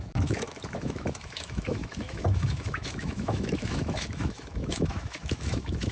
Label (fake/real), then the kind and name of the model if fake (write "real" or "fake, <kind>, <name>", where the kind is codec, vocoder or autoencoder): fake, autoencoder, DAC-VAE